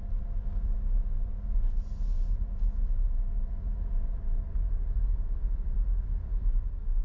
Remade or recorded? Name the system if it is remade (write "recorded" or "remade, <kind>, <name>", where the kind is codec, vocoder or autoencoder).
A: recorded